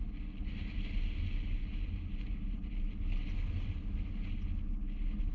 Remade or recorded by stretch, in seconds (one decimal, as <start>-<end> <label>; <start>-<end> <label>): 0.0-1.6 recorded; 1.6-2.9 remade; 2.9-5.3 recorded